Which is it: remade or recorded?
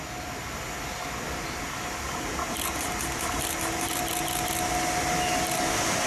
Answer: recorded